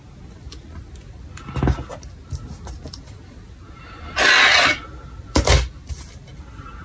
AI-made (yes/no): no